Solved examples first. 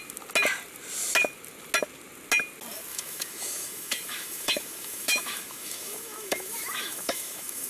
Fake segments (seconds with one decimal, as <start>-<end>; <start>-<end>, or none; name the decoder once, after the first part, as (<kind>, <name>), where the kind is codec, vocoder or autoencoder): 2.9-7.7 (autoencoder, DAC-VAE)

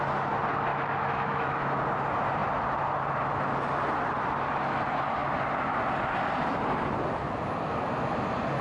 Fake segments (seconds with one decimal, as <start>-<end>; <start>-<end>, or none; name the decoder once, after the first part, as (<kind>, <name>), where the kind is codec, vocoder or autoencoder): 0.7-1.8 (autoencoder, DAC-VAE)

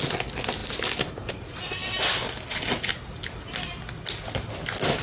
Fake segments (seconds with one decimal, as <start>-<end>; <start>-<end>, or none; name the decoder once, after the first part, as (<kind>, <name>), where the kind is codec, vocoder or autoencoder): none

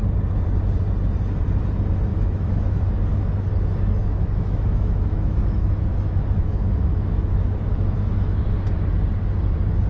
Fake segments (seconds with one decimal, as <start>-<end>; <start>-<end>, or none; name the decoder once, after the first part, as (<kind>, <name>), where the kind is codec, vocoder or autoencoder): 2.1-2.9 (autoencoder, DAC-VAE); 4.0-8.4

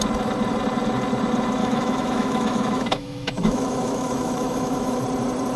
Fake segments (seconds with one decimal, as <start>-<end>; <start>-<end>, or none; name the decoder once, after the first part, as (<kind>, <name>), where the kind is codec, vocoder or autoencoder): 1.6-5.0 (autoencoder, DAC-VAE)